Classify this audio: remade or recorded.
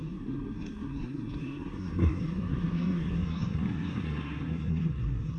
remade